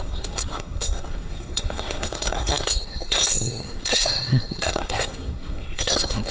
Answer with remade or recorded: remade